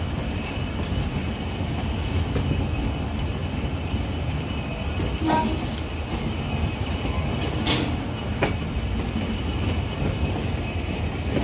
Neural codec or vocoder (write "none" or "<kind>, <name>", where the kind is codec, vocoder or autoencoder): none